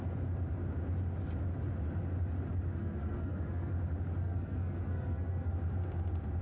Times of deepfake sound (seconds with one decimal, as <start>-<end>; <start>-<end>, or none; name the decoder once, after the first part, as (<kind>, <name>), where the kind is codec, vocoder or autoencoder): 2.8-3.7 (codec, SNAC); 4.2-5.5

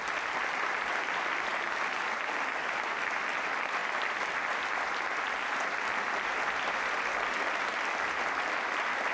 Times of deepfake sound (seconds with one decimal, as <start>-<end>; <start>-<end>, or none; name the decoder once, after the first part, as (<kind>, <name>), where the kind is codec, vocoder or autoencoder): none

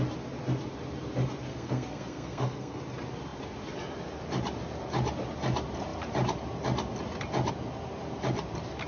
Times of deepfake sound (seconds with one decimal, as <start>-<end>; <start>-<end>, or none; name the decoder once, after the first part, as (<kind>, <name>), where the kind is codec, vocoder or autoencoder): 1.5-2.8 (codec, SNAC)

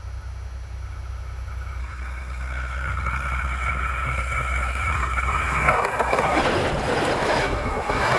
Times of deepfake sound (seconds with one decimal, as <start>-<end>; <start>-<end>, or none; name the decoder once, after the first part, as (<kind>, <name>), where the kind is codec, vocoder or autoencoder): 1.8-6.4 (codec, SNAC); 7.4-8.2

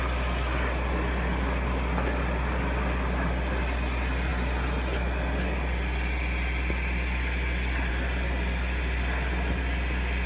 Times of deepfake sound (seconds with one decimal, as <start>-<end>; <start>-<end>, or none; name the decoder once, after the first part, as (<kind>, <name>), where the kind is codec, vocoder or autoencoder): none

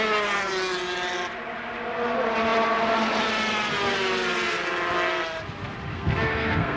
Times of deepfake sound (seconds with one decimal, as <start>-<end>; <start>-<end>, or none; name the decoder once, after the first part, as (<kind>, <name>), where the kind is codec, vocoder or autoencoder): 5.9-6.8 (codec, SNAC)